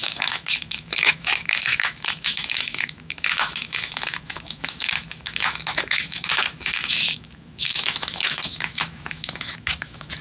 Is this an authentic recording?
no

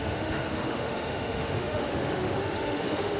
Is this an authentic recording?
no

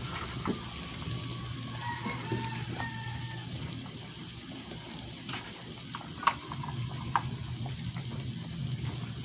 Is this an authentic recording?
yes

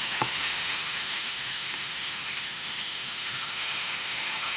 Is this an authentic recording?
no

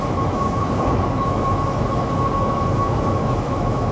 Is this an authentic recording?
no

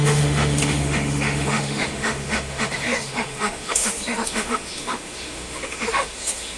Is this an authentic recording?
no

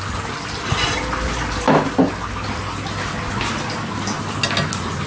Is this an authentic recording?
yes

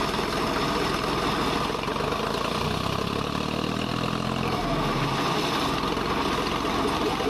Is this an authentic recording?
yes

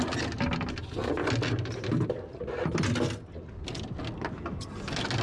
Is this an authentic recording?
yes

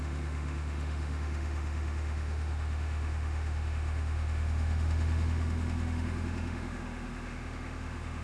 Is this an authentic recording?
no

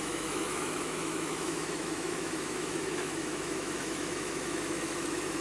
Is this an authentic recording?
no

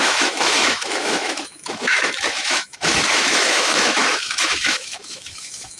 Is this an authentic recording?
no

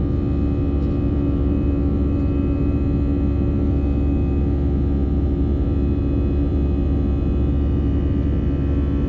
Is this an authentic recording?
yes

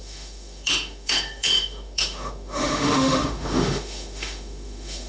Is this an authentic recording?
no